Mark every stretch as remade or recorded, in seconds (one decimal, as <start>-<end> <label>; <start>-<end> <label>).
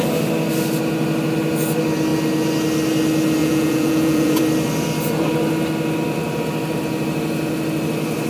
0.0-3.4 recorded; 3.4-4.4 remade; 4.4-8.3 recorded